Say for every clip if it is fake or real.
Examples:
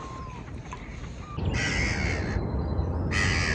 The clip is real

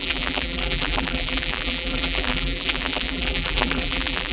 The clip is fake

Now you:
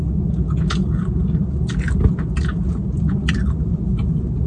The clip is real